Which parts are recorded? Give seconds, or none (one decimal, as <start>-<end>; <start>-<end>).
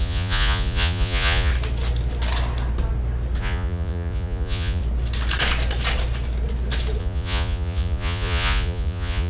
1.5-3.4; 4.8-7.0